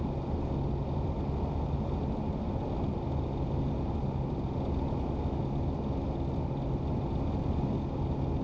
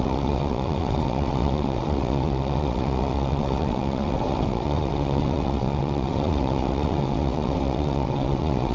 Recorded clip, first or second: first